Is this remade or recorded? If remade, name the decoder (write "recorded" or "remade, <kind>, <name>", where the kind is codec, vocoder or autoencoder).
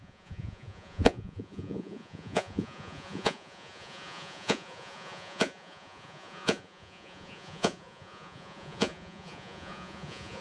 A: remade, vocoder, Vocos